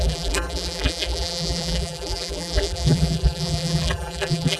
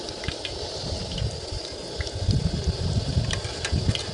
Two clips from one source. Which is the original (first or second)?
second